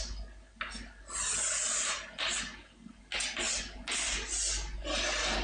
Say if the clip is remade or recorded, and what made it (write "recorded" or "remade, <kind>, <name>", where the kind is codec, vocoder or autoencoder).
recorded